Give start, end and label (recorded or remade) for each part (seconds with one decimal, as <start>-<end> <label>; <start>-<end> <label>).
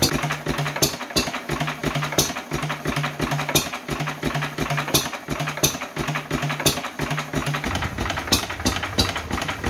0.0-7.4 recorded; 7.4-8.3 remade; 8.3-9.7 recorded